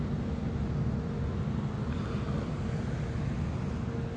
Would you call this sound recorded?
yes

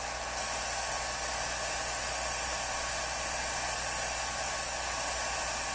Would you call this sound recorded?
yes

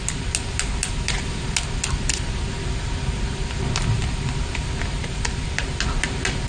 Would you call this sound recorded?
yes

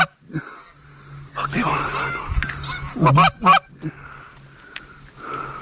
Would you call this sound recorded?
yes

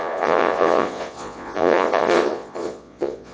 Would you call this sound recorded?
no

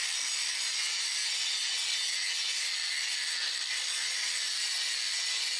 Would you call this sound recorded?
yes